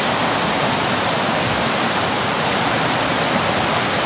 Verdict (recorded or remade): recorded